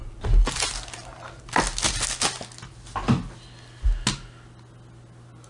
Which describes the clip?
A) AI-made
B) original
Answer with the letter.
B